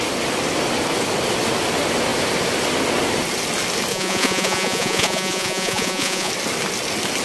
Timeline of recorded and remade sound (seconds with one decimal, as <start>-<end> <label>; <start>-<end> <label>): 0.0-3.9 recorded; 3.9-6.3 remade; 6.3-7.2 recorded